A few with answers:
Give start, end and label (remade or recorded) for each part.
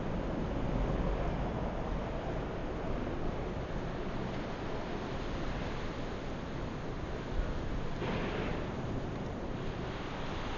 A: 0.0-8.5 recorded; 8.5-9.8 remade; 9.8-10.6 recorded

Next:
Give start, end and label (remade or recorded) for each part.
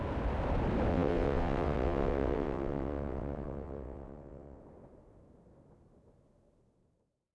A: 0.0-0.9 recorded; 0.9-4.6 remade; 4.6-7.3 recorded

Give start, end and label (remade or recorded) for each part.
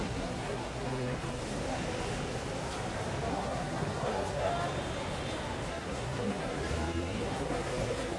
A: 0.0-1.4 remade; 1.4-3.3 recorded; 3.3-4.5 remade; 4.5-5.7 recorded; 5.7-8.2 remade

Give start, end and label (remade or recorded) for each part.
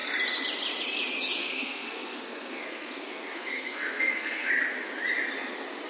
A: 0.0-1.4 recorded; 1.4-4.5 remade; 4.5-5.9 recorded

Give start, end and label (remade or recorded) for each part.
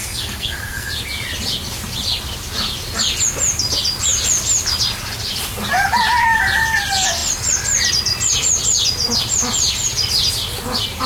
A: 0.0-0.9 remade; 0.9-11.1 recorded